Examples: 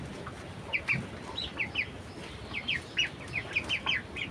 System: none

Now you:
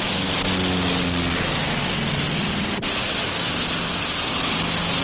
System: none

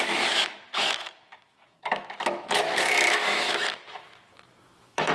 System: autoencoder, DAC-VAE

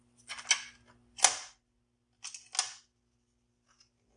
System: none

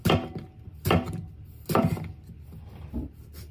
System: none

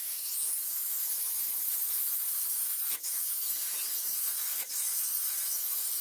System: autoencoder, DAC-VAE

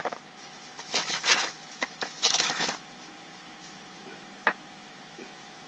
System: autoencoder, DAC-VAE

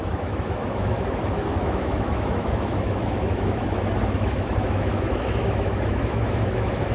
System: autoencoder, DAC-VAE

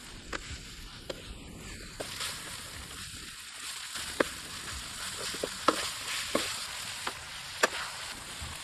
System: none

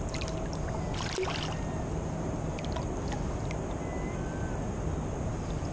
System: none